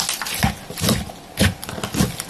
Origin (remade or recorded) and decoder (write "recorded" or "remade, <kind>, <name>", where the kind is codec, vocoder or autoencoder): recorded